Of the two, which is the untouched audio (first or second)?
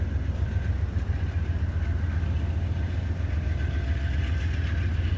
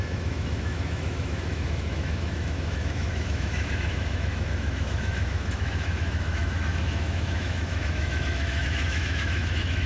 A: first